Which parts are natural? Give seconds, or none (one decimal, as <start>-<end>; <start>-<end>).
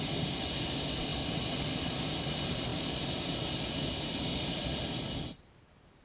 0.0-6.0